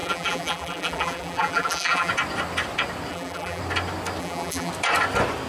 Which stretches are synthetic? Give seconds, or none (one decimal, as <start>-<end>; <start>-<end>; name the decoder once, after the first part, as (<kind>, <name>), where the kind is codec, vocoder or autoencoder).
0.0-2.1 (vocoder, BigVGAN v2); 3.1-3.6; 4.2-4.7